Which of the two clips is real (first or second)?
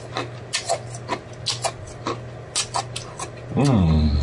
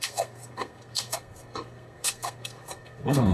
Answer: first